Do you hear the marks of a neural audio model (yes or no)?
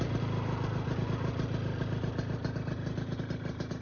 no